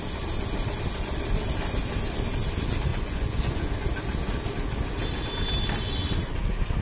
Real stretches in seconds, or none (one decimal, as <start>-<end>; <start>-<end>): 0.0-2.9; 3.7-6.8